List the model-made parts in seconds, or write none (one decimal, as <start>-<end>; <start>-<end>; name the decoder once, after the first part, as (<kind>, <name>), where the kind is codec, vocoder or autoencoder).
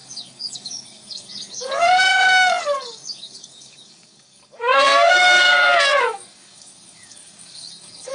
0.0-8.1 (codec, DAC)